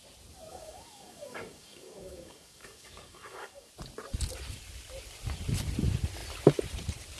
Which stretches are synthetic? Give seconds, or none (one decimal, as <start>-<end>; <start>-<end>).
0.5-3.7